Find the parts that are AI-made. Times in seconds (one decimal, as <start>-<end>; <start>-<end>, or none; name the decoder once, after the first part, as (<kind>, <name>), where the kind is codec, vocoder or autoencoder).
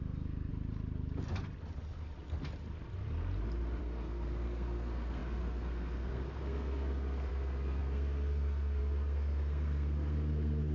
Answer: 0.0-0.5 (codec, SNAC); 3.8-10.7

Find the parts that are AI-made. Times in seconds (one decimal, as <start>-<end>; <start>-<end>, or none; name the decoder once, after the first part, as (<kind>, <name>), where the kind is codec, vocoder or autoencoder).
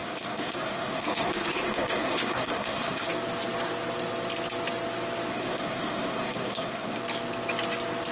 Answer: 0.0-3.1 (codec, SNAC); 5.3-7.0